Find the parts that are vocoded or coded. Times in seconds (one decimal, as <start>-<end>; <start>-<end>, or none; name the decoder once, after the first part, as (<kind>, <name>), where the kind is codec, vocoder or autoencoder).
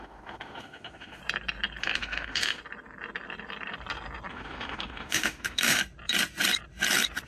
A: 0.0-1.2 (autoencoder, DAC-VAE); 1.8-2.6; 4.3-5.8